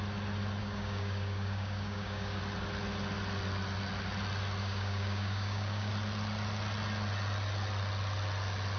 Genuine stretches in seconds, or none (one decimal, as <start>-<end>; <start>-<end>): 0.0-0.6; 2.4-4.6; 5.9-8.8